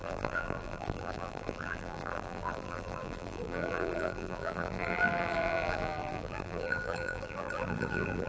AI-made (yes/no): yes